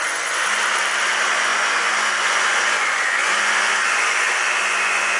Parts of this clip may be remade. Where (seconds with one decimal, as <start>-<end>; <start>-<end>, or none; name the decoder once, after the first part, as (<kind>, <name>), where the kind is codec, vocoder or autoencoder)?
0.0-0.6 (vocoder, Vocos); 1.1-5.2